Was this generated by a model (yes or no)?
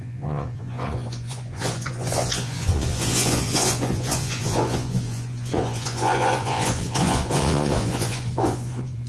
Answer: yes